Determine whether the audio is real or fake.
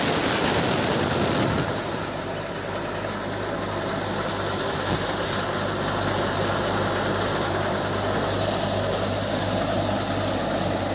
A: real